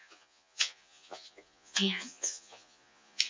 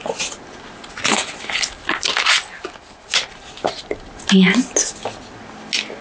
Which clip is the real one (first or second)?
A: second